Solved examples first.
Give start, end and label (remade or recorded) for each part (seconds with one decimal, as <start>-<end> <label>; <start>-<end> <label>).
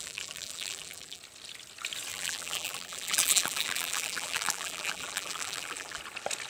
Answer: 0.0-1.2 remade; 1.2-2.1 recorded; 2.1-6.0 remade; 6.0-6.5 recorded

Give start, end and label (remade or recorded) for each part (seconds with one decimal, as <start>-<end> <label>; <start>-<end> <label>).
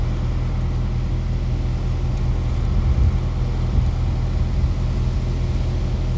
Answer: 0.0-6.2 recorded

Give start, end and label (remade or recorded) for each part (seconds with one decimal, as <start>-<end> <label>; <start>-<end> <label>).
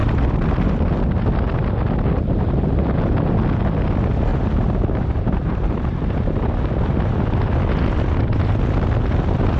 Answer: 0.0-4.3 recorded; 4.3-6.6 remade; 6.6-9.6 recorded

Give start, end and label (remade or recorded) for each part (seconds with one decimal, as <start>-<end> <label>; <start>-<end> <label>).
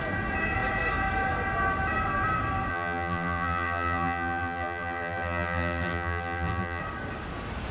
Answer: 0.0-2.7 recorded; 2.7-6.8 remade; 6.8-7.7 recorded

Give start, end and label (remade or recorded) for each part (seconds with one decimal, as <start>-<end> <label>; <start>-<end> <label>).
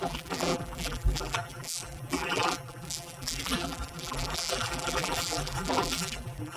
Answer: 0.0-6.6 remade